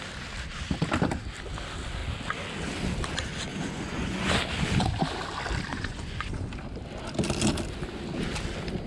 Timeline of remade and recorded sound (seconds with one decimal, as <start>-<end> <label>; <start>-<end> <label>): 0.0-3.5 recorded; 3.5-4.3 remade; 4.3-5.7 recorded; 5.7-6.5 remade; 6.5-8.9 recorded